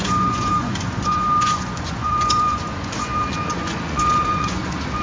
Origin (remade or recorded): remade